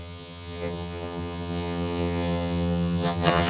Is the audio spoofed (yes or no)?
yes